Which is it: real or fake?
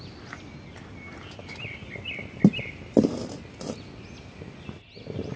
real